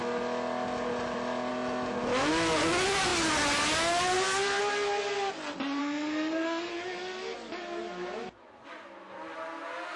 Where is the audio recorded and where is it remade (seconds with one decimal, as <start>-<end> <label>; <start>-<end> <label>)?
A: 0.0-5.8 recorded; 5.8-6.7 remade; 6.7-10.0 recorded